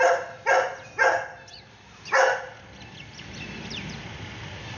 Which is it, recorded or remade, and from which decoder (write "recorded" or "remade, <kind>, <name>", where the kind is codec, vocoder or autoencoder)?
recorded